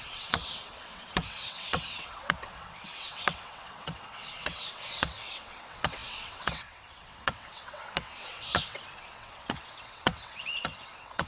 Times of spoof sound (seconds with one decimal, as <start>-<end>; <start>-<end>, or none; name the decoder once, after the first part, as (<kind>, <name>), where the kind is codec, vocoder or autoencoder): 0.0-11.3 (vocoder, WaveNeXt)